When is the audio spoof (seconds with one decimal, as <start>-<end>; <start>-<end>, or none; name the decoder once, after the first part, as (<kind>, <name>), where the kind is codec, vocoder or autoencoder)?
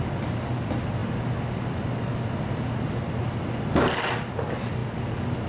none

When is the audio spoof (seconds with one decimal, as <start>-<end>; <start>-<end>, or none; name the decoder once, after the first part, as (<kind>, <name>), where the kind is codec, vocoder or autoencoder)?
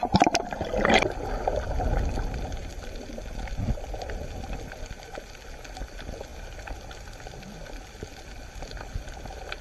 none